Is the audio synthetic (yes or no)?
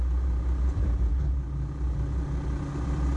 no